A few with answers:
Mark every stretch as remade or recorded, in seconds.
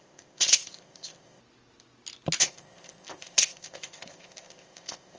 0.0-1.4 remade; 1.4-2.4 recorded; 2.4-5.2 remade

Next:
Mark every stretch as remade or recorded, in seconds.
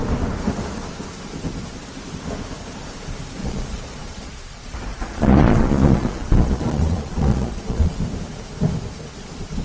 0.0-3.4 recorded; 3.4-8.0 remade; 8.0-9.6 recorded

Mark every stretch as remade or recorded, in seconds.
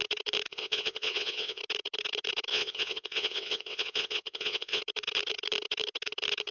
0.0-0.5 recorded; 0.5-1.6 remade; 1.6-2.5 recorded; 2.5-4.8 remade; 4.8-6.5 recorded